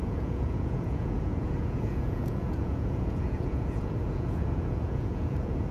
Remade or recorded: remade